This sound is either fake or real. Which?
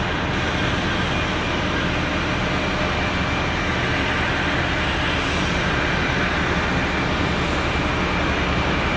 real